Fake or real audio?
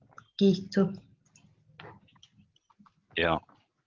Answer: real